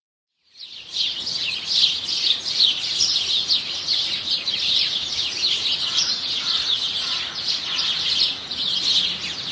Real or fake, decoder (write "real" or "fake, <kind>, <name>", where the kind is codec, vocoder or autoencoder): fake, vocoder, Vocos